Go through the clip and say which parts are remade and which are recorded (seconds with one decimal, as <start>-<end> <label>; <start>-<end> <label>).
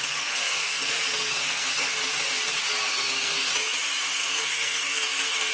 0.0-2.0 remade; 2.0-2.9 recorded; 2.9-3.5 remade; 3.5-4.0 recorded; 4.0-5.5 remade